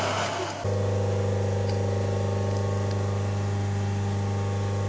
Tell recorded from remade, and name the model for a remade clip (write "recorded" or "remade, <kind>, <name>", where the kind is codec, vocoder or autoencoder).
recorded